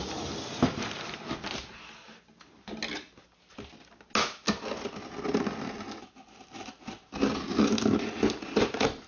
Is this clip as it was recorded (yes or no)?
yes